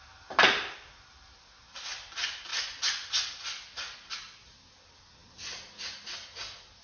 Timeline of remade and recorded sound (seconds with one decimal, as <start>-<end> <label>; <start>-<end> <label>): 0.0-6.8 recorded